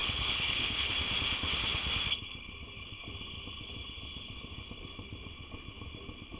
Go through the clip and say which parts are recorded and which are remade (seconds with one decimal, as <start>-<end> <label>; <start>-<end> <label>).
0.0-0.9 remade; 0.9-6.4 recorded